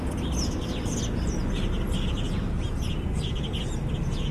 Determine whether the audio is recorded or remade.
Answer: recorded